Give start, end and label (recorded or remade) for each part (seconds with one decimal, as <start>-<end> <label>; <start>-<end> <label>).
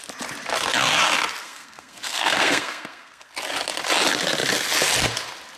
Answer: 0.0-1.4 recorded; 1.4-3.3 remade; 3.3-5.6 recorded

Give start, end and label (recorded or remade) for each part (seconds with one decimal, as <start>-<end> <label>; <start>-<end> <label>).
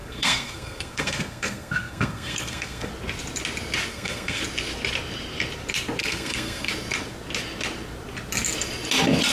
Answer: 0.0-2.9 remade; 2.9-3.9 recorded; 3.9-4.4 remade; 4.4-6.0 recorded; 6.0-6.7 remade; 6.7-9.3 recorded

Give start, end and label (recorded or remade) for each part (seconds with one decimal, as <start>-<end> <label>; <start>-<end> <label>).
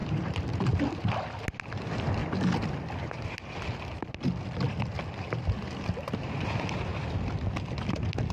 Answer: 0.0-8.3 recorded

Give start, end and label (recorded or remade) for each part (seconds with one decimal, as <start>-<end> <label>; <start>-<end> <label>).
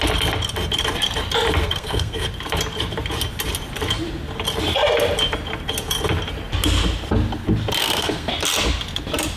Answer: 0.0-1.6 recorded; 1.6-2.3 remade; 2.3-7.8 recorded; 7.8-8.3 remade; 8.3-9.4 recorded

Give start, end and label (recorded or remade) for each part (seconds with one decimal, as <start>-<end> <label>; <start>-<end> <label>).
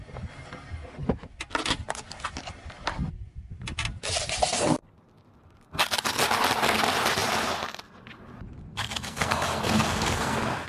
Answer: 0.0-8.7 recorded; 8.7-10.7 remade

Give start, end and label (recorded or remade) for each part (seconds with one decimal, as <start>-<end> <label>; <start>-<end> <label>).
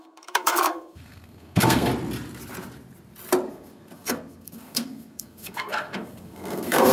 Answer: 0.0-1.9 remade; 1.9-3.5 recorded; 3.5-6.9 remade